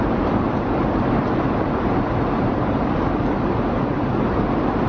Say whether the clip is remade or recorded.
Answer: remade